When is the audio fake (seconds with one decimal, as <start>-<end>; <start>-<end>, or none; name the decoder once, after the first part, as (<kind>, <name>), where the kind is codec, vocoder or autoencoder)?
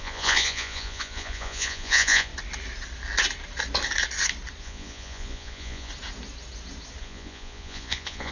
0.0-2.3 (vocoder, Vocos); 4.6-5.9; 7.0-8.3